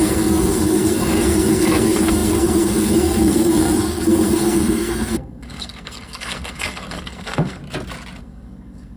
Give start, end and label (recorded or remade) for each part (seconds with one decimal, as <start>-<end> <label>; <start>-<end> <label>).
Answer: 0.0-7.6 remade; 7.6-8.2 recorded; 8.2-9.0 remade